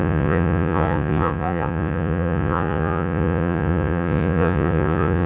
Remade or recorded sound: remade